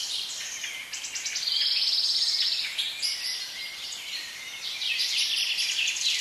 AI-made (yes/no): yes